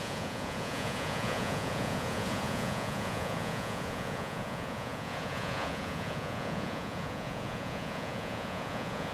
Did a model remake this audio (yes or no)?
yes